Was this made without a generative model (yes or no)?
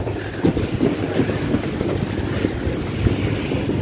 yes